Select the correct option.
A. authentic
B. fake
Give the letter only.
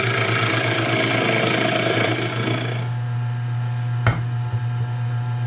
A